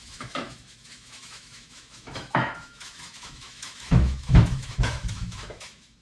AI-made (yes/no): yes